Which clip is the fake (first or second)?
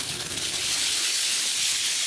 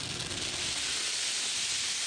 first